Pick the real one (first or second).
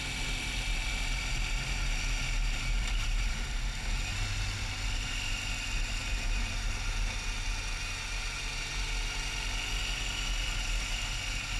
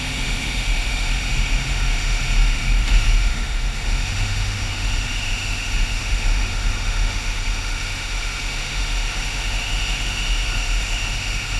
first